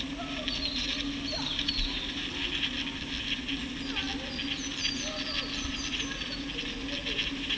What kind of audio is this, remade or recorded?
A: recorded